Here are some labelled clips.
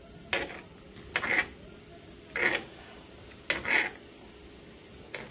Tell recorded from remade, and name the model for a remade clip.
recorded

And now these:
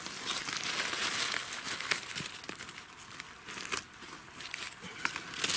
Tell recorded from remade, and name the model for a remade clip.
recorded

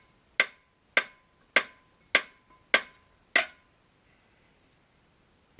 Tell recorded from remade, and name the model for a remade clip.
recorded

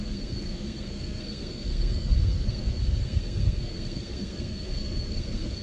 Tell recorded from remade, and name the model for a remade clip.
remade, codec, SNAC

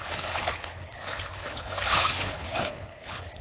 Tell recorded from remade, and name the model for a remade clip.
remade, codec, HILCodec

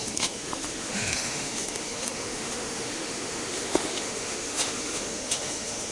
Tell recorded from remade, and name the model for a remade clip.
remade, autoencoder, DAC-VAE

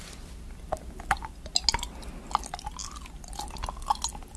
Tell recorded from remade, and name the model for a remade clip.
recorded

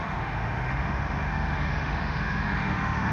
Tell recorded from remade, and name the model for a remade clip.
remade, autoencoder, DAC-VAE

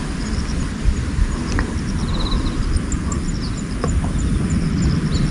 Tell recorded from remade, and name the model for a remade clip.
recorded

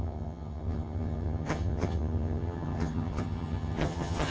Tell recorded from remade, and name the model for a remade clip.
remade, vocoder, HiFi-GAN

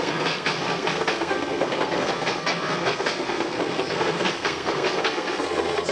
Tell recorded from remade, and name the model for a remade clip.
remade, codec, SNAC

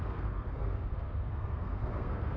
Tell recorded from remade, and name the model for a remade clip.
remade, codec, SNAC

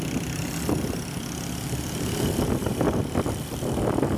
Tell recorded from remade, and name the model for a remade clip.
remade, vocoder, BigVGAN v2